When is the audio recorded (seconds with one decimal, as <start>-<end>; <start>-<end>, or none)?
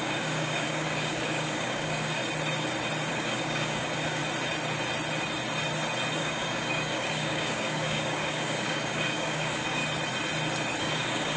2.2-3.1; 4.2-6.2; 9.8-10.8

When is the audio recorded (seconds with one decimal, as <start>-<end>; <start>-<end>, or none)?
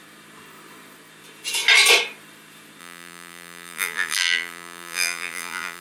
0.0-2.8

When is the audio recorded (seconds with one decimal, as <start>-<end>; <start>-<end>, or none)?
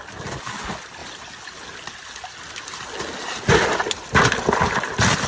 0.0-5.3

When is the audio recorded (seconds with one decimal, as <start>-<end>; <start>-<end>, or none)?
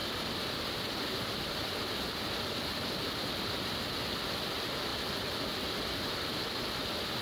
0.0-7.2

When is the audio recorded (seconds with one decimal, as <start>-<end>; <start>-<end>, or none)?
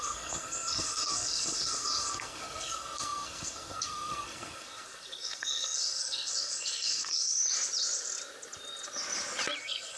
7.4-9.6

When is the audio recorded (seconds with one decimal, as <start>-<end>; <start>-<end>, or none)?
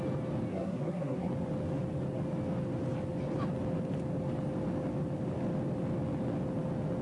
0.0-0.5; 1.3-7.0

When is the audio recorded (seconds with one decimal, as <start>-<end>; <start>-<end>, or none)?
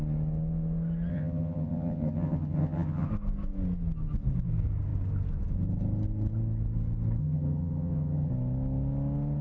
0.0-1.1; 3.1-7.2; 8.3-9.4